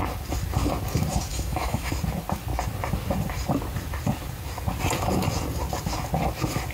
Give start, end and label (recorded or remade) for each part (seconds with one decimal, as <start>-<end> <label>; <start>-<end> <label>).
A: 0.0-1.3 recorded; 1.3-1.9 remade; 1.9-6.7 recorded